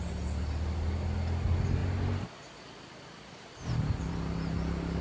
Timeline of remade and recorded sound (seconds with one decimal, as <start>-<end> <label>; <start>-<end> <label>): 0.0-5.0 recorded